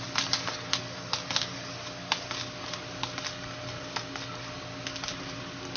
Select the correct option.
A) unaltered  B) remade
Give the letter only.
A